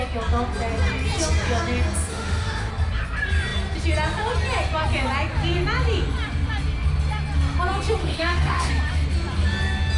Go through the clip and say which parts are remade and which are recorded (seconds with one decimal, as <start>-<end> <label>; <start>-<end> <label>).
0.0-2.1 recorded; 2.1-2.7 remade; 2.7-8.0 recorded; 8.0-8.7 remade; 8.7-10.0 recorded